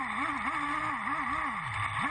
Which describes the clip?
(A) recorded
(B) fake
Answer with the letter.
A